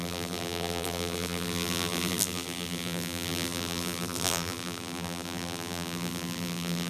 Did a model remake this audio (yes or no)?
yes